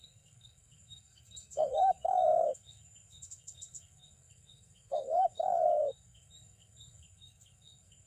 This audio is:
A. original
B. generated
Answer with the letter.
B